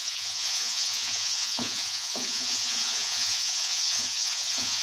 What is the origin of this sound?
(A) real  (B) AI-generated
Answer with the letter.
B